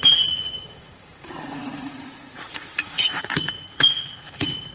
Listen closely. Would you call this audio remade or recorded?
remade